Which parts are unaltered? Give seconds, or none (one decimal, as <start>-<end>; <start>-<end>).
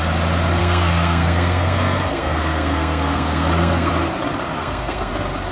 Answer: 0.0-0.6; 3.9-4.6; 5.1-5.5